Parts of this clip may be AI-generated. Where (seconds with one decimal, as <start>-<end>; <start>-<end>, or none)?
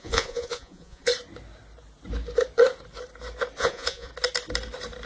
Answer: 0.0-1.1; 3.6-4.1